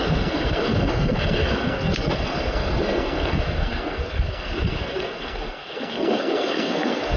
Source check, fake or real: fake